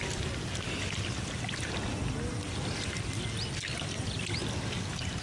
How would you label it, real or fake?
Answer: real